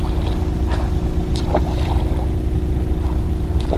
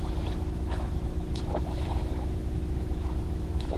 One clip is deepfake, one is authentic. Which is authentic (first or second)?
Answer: first